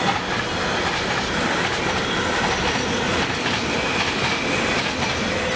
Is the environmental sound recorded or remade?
recorded